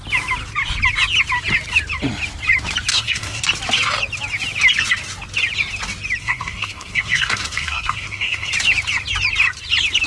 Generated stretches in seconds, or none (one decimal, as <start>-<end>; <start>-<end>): 2.9-3.4; 6.2-8.5